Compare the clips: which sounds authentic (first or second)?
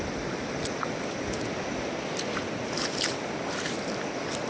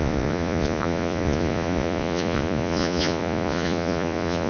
first